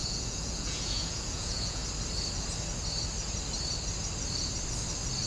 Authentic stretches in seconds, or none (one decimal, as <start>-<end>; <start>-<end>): 1.8-5.3